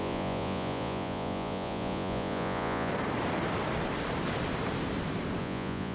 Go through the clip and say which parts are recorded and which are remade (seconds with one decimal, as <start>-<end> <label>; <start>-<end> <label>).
0.0-2.9 remade; 2.9-5.4 recorded; 5.4-5.9 remade